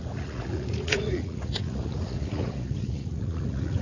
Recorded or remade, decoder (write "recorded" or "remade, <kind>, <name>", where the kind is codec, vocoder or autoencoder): remade, vocoder, Vocos